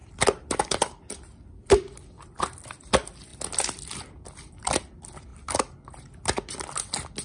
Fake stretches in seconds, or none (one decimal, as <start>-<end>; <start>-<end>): none